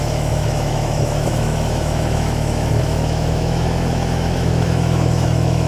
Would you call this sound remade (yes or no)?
yes